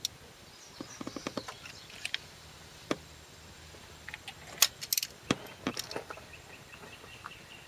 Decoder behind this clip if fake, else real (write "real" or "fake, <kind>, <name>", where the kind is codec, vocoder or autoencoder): real